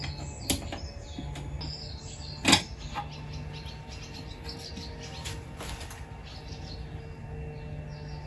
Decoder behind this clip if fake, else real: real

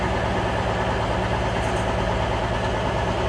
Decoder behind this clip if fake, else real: real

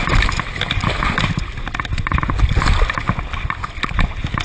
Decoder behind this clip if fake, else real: real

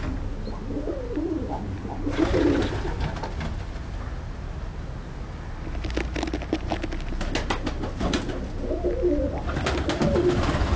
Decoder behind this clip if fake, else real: real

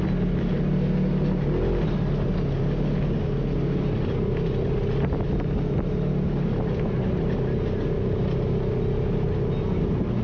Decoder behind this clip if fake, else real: real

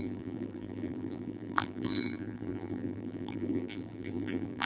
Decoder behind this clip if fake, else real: fake, vocoder, BigVGAN v2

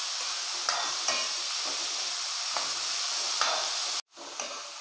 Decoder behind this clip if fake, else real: real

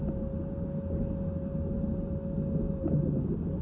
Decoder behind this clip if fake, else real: real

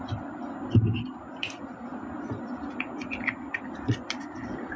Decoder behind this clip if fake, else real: real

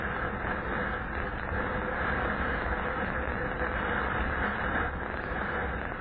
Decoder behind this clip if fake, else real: real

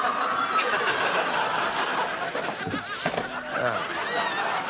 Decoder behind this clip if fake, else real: real